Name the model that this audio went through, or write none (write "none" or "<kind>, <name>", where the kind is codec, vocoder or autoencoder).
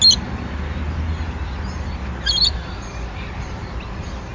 none